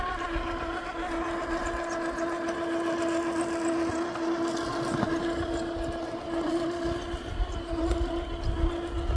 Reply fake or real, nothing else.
real